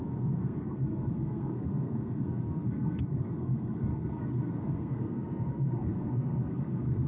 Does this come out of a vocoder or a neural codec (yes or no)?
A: yes